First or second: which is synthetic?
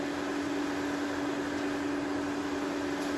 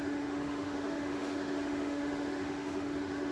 second